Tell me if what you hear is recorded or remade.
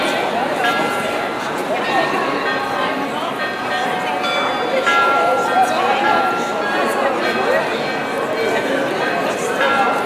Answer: recorded